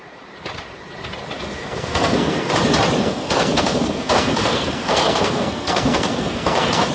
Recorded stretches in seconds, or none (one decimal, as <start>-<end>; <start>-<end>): 0.0-1.6; 2.5-3.0

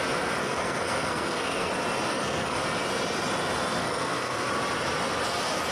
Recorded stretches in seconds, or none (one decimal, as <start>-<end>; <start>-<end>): 0.0-0.4; 1.7-2.1; 2.6-3.8; 4.5-5.7

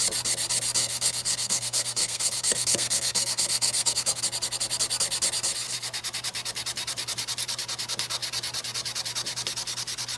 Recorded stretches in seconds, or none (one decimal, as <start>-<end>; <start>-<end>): 0.0-0.8; 4.2-10.2

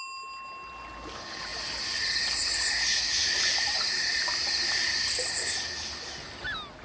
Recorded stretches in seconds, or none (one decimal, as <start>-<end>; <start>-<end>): 0.0-6.8

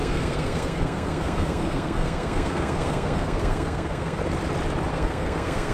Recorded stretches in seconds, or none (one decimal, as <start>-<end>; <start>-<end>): 4.2-4.9